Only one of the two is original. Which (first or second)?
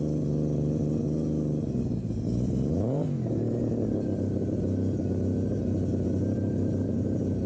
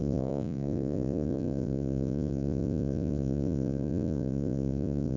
first